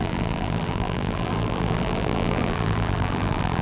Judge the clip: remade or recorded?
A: remade